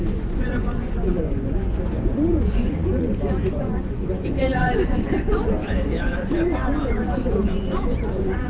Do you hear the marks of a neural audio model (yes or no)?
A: yes